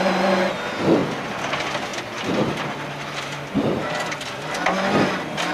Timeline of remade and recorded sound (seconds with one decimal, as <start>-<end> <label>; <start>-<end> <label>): 0.0-5.5 recorded